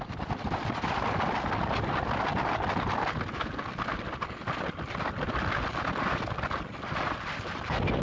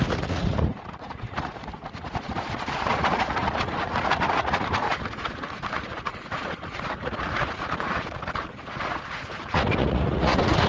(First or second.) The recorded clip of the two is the first